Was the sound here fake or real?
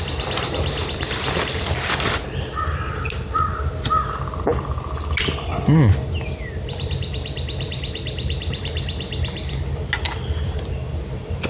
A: real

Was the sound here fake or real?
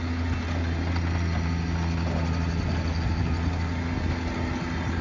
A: real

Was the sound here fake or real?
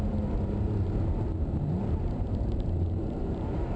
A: fake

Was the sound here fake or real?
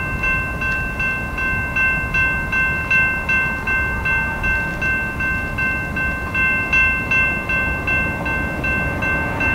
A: real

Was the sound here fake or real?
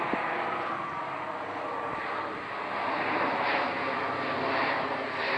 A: real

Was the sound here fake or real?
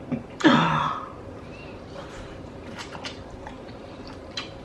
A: fake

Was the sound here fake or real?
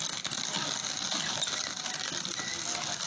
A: real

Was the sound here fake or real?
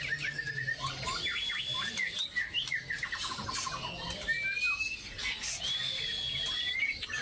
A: real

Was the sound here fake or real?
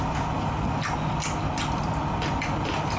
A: real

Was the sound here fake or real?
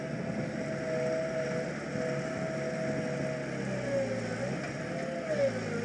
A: real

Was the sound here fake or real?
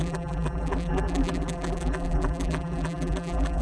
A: fake